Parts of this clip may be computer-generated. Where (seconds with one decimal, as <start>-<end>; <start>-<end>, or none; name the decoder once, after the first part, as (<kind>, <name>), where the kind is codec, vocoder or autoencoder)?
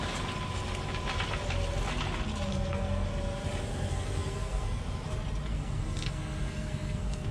2.5-3.1 (codec, SNAC); 3.7-4.8; 5.5-7.3